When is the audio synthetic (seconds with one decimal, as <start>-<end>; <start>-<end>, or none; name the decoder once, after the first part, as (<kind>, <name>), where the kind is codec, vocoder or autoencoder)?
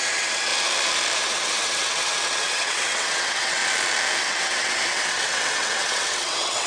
0.0-0.5 (vocoder, WaveNeXt); 1.2-3.6; 4.2-6.7